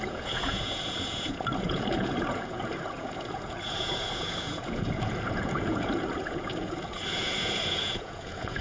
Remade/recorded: remade